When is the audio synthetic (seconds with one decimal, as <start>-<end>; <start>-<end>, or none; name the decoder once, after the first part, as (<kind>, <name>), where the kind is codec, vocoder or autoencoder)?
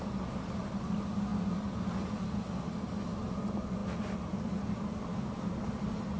3.8-4.5 (vocoder, BigVGAN v2)